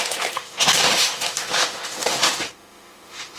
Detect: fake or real fake